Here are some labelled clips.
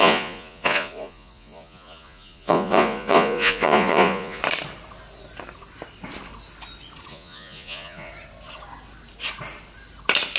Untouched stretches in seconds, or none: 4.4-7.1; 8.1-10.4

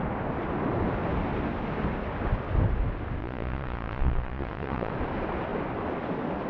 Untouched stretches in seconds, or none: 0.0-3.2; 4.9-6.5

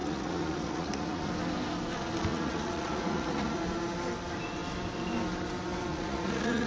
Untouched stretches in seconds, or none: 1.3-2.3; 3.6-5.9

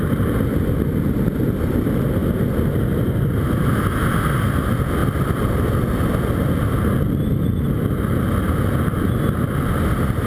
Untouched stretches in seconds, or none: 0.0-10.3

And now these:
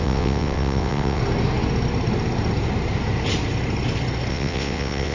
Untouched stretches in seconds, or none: 1.2-4.3